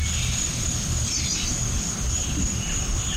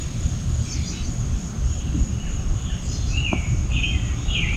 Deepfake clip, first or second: second